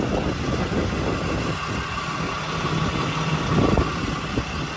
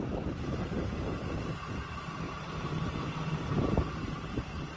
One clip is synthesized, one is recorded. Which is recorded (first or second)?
first